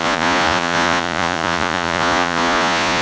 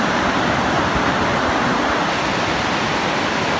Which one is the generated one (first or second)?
first